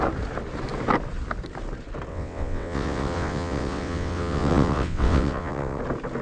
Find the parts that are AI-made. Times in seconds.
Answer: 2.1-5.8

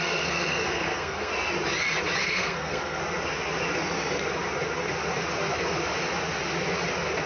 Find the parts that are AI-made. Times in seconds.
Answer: 0.0-1.3; 2.2-3.0

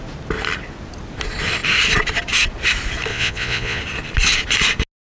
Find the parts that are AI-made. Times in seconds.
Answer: 3.1-3.8

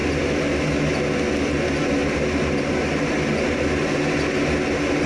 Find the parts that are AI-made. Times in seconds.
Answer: none